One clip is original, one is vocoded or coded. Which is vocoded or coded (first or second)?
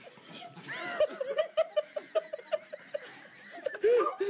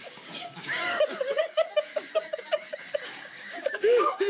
second